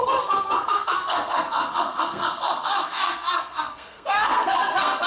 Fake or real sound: fake